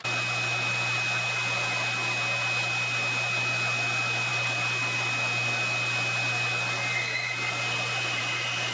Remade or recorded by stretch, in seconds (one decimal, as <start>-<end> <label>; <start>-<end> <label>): 0.0-8.7 recorded